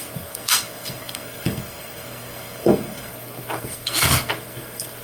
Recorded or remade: remade